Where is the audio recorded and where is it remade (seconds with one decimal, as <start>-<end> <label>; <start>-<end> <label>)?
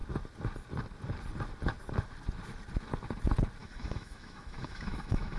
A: 0.0-3.6 recorded; 3.6-5.4 remade